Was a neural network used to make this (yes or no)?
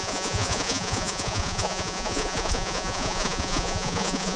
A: yes